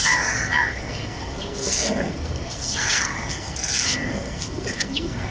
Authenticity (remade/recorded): remade